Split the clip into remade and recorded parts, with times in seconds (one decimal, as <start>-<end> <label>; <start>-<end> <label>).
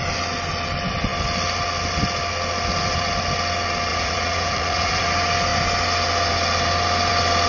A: 0.0-3.9 recorded; 3.9-5.1 remade; 5.1-7.5 recorded